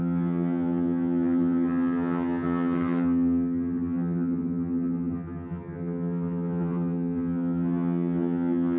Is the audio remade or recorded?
remade